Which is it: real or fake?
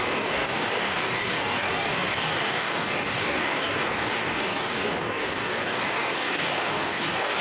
fake